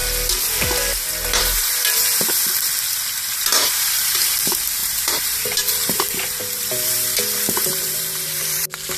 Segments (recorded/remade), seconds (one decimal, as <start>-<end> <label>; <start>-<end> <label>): 0.0-1.4 recorded; 1.4-1.8 remade; 1.8-3.4 recorded; 3.4-9.0 remade